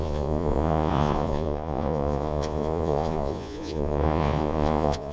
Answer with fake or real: fake